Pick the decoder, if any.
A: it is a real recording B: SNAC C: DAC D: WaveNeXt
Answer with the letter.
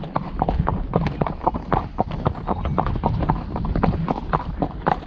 A